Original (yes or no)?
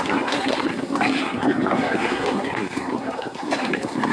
no